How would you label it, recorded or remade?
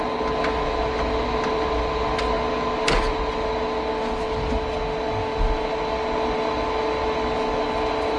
recorded